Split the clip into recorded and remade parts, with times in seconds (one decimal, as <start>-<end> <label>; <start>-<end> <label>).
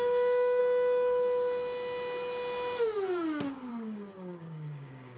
0.0-0.6 remade; 0.6-3.7 recorded; 3.7-5.2 remade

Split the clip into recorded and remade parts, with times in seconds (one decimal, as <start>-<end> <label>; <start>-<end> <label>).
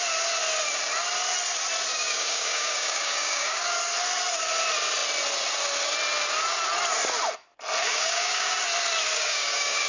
0.0-1.9 recorded; 1.9-3.6 remade; 3.6-7.8 recorded; 7.8-8.6 remade; 8.6-9.1 recorded; 9.1-9.9 remade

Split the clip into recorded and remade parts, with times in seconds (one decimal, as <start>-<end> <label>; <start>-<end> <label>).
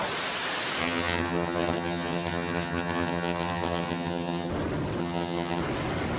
0.0-0.8 recorded; 0.8-4.5 remade; 4.5-5.0 recorded; 5.0-5.6 remade; 5.6-6.2 recorded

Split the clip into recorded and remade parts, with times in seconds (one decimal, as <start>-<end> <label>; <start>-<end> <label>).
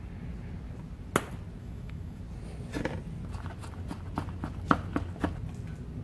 0.0-1.6 recorded; 1.6-2.2 remade; 2.2-6.0 recorded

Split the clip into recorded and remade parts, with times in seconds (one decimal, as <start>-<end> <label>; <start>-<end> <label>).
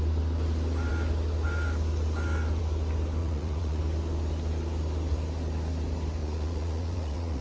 0.0-3.2 recorded; 3.2-3.8 remade; 3.8-6.2 recorded; 6.2-7.4 remade